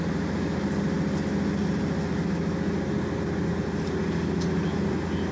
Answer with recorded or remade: recorded